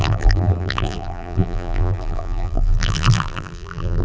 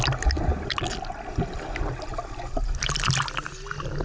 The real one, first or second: second